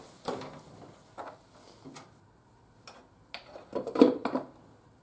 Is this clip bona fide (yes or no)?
yes